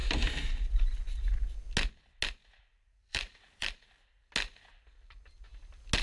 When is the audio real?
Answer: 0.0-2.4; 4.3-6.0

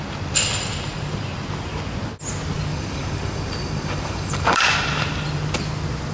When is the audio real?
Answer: 0.0-2.7; 4.6-6.1

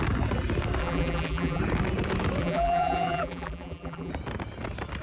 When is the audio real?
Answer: 0.0-0.8; 1.6-2.4; 4.1-5.0

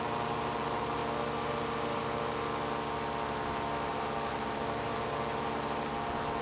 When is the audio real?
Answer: 1.0-1.5; 2.0-3.9

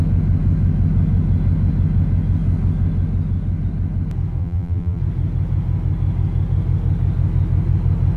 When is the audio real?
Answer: 0.0-4.4; 5.0-8.2

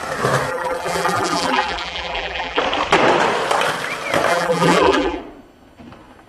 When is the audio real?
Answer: 0.0-0.5; 2.6-4.3; 5.2-6.3